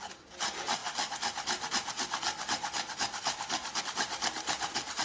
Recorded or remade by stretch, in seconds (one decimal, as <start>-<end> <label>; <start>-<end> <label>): 0.0-5.0 recorded

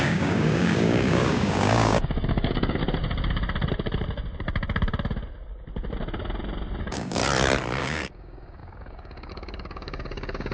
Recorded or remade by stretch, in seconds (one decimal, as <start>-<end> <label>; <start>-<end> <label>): 0.0-2.8 remade; 2.8-6.8 recorded; 6.8-7.2 remade; 7.2-7.8 recorded; 7.8-10.5 remade

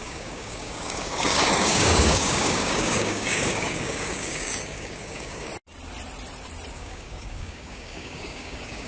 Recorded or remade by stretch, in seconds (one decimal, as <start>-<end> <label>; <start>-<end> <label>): 0.0-5.5 remade; 5.5-6.7 recorded; 6.7-8.9 remade

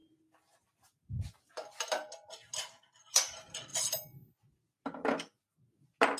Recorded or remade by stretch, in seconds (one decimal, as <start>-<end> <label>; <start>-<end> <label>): 0.0-6.2 recorded

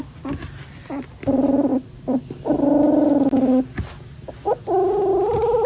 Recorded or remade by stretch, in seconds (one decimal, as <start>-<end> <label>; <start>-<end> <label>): 0.0-5.7 recorded

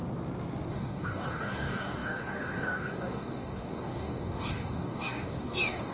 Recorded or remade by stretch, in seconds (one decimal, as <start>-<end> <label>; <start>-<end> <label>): 0.0-0.7 recorded; 0.7-5.9 remade

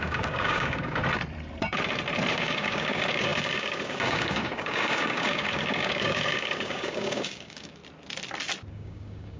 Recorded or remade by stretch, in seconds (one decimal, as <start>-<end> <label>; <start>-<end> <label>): 0.0-1.0 remade; 1.0-2.3 recorded; 2.3-7.8 remade; 7.8-8.7 recorded; 8.7-9.4 remade

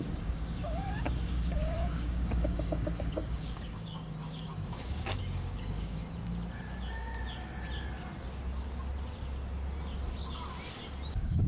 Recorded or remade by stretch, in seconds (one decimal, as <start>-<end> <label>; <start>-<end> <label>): 0.0-6.0 remade; 6.0-11.1 recorded; 11.1-11.5 remade